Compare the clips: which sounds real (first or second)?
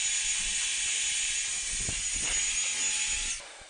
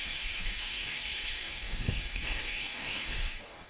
first